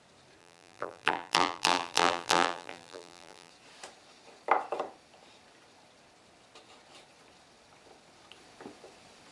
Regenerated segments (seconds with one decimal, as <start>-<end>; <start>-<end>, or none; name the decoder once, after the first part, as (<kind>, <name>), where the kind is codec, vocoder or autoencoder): 0.4-3.5 (vocoder, BigVGAN v2)